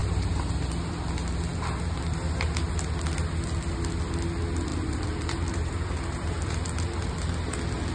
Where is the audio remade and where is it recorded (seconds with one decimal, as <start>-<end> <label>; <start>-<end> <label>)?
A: 0.0-0.6 remade; 0.6-4.7 recorded; 4.7-7.1 remade; 7.1-7.9 recorded